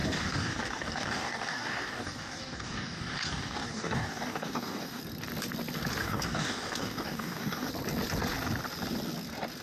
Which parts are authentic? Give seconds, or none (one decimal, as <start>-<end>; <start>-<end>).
5.0-6.0; 7.7-9.6